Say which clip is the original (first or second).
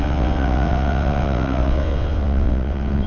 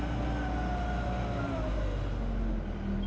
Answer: second